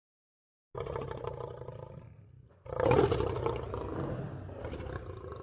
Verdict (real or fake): real